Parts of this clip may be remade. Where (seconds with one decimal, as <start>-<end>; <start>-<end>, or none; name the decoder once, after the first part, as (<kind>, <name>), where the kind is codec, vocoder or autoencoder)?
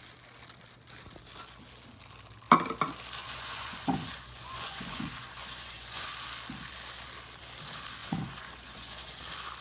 3.2-6.1 (vocoder, Vocos); 8.0-9.2